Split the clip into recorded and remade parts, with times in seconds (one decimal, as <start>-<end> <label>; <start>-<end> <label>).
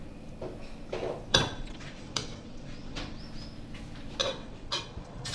0.0-1.3 recorded; 1.3-3.2 remade; 3.2-4.2 recorded; 4.2-5.3 remade